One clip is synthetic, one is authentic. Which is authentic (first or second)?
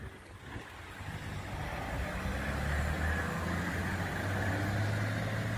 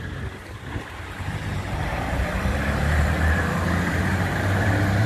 first